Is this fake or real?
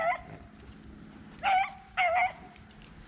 real